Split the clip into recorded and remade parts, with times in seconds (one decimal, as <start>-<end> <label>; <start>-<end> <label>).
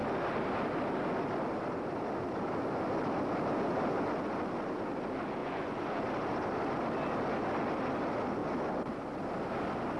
0.0-5.4 recorded; 5.4-6.0 remade; 6.0-10.0 recorded